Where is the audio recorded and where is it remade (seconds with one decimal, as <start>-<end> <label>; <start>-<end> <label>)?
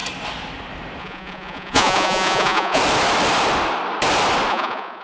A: 0.0-1.0 recorded; 1.0-2.8 remade; 2.8-4.5 recorded; 4.5-5.0 remade